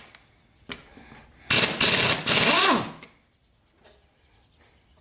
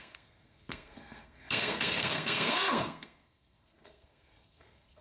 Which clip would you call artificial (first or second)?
second